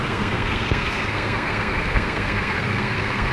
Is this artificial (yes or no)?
yes